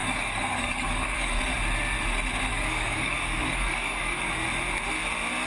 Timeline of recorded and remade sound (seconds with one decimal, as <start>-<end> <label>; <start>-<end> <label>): 0.0-1.4 remade; 1.4-2.5 recorded; 2.5-4.3 remade; 4.3-5.5 recorded